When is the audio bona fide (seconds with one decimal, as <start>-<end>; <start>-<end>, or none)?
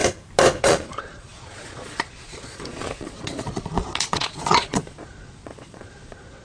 0.0-0.6